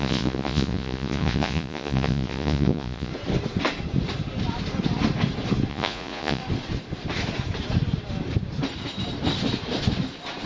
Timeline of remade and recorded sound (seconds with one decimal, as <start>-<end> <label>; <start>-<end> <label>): 0.0-3.1 remade; 3.1-5.7 recorded; 5.7-6.4 remade; 6.4-10.5 recorded